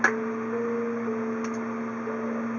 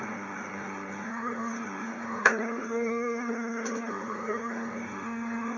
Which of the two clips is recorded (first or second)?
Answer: first